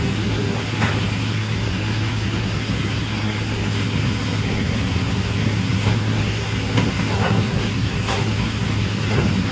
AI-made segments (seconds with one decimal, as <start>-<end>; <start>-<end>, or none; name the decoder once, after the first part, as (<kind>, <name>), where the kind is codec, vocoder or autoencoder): 0.0-9.5 (codec, SNAC)